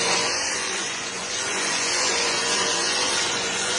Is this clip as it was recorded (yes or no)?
no